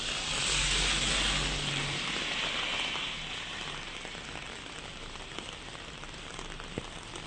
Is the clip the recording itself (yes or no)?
yes